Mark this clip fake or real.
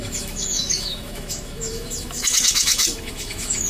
fake